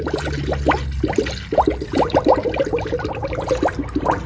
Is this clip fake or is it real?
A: real